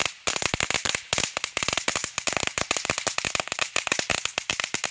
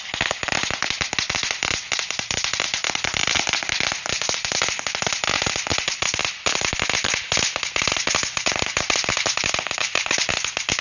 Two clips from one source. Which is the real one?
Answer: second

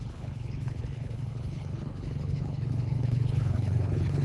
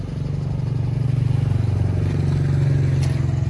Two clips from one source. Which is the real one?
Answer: second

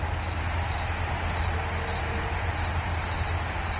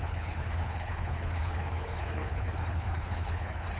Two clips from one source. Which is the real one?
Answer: first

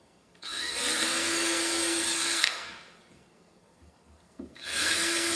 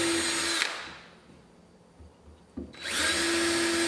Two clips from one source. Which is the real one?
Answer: second